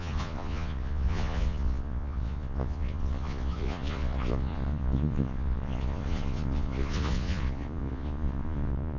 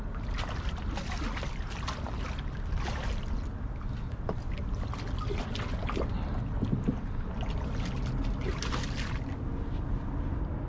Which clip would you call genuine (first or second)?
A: second